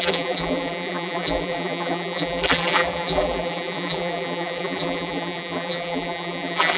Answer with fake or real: fake